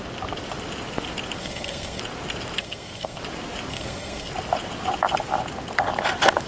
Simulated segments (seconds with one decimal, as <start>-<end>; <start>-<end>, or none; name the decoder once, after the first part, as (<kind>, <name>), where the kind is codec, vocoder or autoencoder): 1.4-2.0 (codec, SNAC); 2.6-3.2; 3.7-4.3

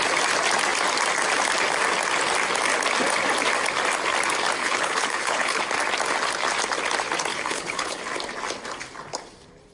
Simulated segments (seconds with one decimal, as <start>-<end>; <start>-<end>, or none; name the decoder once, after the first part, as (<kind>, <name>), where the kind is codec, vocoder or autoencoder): 4.6-5.6 (codec, HILCodec); 7.3-8.0

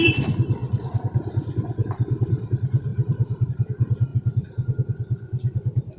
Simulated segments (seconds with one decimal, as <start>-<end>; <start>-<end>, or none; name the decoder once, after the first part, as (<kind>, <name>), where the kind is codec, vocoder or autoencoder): 0.0-4.1 (vocoder, BigVGAN v2)

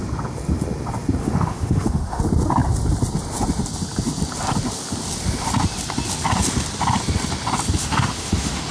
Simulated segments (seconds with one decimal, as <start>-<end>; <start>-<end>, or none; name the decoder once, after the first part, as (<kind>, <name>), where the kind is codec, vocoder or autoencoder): 1.2-2.2 (autoencoder, DAC-VAE); 7.8-8.7

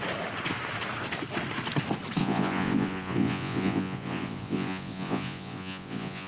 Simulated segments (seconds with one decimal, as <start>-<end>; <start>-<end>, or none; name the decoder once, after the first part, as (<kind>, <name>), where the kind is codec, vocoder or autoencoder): 2.2-6.3 (vocoder, Vocos)

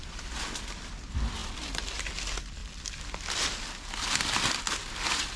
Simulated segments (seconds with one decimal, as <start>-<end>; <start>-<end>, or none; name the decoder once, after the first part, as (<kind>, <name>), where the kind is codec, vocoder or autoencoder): none